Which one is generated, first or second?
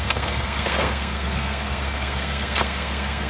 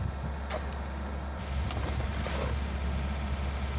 first